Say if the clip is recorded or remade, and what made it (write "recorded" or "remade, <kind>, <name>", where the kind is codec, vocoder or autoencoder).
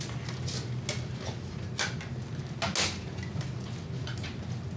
recorded